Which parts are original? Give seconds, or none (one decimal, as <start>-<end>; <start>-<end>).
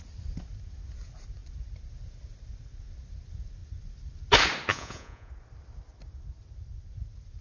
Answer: 0.0-4.7; 5.3-7.4